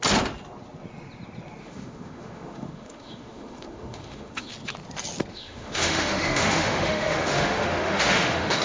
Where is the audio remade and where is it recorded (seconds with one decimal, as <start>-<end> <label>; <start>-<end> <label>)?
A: 0.0-1.6 recorded; 1.6-4.5 remade; 4.5-5.3 recorded; 5.3-8.6 remade